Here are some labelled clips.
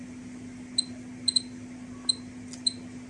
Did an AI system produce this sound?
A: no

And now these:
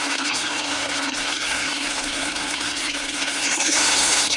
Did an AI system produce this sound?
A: yes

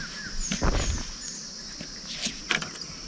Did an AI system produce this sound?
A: no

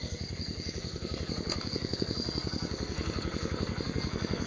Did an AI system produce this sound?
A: yes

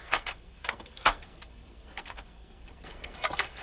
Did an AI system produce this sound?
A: yes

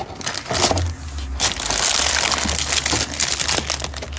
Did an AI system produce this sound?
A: no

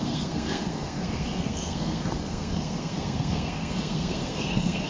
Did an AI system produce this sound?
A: yes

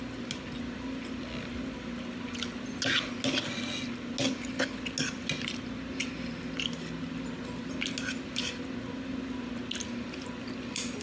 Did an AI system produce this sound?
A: no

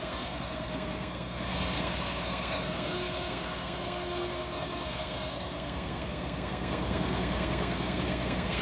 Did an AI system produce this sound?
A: yes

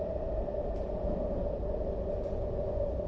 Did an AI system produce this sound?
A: no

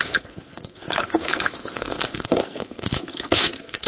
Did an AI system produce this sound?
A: yes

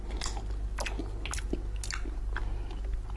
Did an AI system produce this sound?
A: no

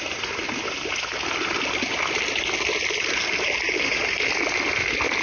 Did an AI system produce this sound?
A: no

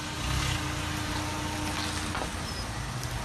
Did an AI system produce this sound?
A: no